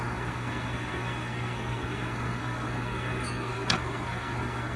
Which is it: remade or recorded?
remade